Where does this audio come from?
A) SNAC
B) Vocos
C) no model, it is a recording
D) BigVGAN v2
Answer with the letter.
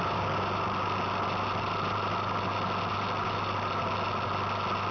C